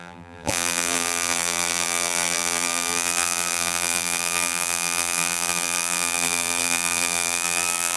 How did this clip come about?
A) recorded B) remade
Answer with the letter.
B